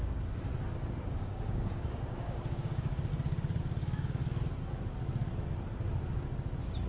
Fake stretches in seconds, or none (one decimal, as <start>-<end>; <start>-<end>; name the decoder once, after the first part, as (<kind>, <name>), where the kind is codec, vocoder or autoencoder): 0.0-0.5 (codec, DAC); 1.1-3.1; 3.6-4.2